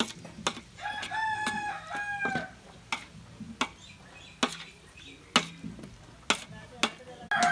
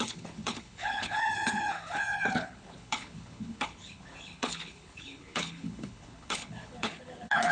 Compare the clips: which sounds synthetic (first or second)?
second